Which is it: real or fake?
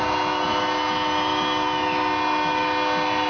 real